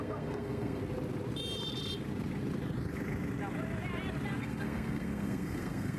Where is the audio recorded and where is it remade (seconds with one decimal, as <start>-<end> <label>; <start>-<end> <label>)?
0.0-0.8 remade; 0.8-4.4 recorded; 4.4-6.0 remade